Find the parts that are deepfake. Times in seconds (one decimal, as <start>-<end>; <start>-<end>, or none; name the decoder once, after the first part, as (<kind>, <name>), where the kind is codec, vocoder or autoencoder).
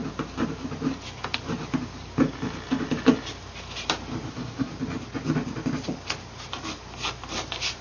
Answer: 4.3-4.7 (codec, SNAC)